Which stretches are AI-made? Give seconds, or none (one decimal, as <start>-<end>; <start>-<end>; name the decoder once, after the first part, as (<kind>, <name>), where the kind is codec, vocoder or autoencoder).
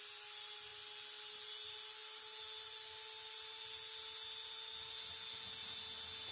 none